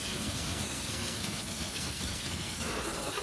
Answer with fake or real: fake